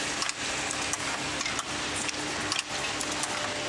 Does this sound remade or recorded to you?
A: recorded